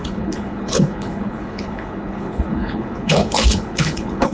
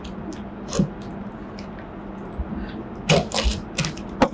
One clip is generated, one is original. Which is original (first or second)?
second